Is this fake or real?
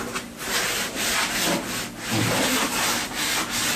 real